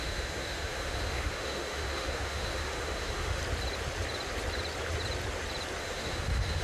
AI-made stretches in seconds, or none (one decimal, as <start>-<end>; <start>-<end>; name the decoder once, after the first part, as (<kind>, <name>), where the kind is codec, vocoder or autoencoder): 0.0-3.4 (autoencoder, DAC-VAE); 5.8-6.6